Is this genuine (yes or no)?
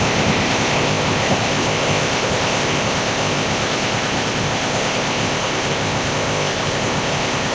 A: no